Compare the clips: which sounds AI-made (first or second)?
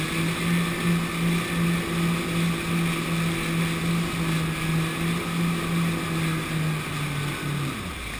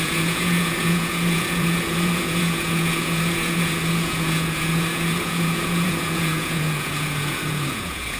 second